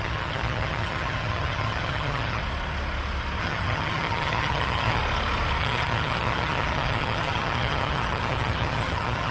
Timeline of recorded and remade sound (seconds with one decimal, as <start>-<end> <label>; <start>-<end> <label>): 0.0-2.4 remade; 2.4-3.4 recorded; 3.4-5.0 remade; 5.0-5.6 recorded; 5.6-9.3 remade